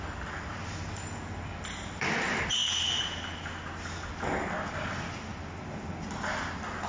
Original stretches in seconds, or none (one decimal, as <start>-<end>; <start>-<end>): 0.0-6.9